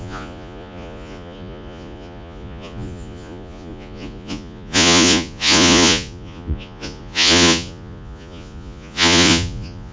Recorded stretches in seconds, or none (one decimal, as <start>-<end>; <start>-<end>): none